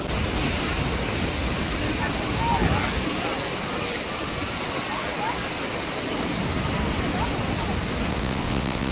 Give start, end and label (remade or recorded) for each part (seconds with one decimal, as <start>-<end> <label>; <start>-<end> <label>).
0.0-8.1 recorded; 8.1-8.9 remade